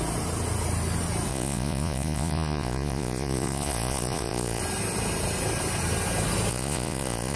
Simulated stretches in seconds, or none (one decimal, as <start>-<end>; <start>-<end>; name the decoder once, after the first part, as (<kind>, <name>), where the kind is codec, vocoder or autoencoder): 1.3-4.6 (vocoder, Vocos); 6.5-7.4